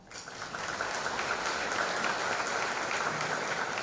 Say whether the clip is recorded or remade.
recorded